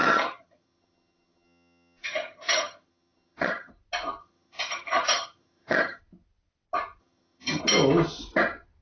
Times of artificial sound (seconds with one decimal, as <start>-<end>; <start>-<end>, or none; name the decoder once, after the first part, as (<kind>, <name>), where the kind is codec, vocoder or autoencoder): 0.0-3.7 (vocoder, HiFi-GAN); 4.2-6.0; 7.0-7.6